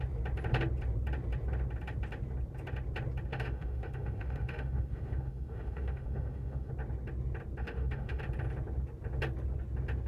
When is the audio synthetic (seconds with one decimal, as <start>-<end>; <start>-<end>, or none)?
3.3-6.7; 7.6-8.2